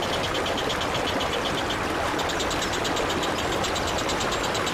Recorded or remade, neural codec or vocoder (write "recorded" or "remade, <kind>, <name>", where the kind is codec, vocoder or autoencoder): recorded